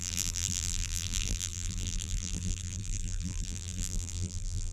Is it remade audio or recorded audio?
remade